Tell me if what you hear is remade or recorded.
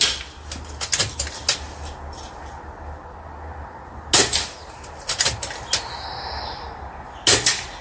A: recorded